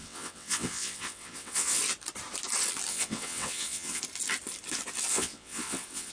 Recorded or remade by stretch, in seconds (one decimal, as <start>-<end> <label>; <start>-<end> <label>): 0.0-1.8 remade; 1.8-2.9 recorded; 2.9-4.0 remade; 4.0-5.1 recorded; 5.1-6.1 remade